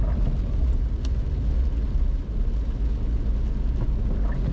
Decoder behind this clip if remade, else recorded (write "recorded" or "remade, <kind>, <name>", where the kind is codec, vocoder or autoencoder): recorded